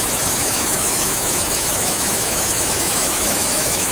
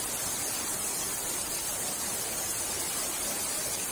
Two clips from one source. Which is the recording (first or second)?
second